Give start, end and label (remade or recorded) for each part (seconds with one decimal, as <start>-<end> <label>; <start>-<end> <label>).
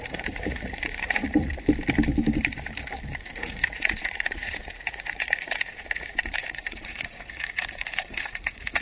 0.0-1.5 remade; 1.5-3.2 recorded; 3.2-8.8 remade